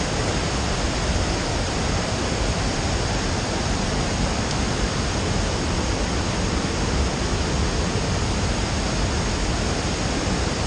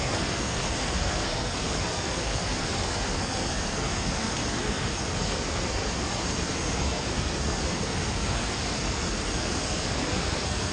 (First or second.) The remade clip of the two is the second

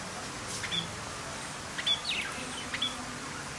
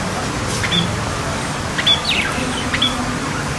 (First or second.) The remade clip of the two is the second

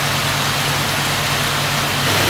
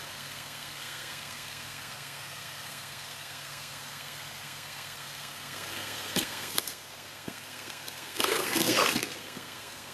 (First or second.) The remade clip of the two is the second